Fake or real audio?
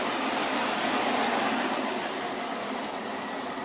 real